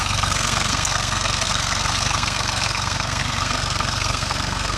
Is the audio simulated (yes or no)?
yes